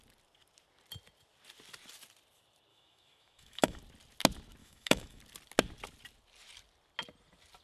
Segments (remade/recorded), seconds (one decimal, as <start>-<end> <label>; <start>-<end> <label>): 0.0-2.7 recorded; 2.7-3.8 remade; 3.8-4.6 recorded; 4.6-5.2 remade; 5.2-7.6 recorded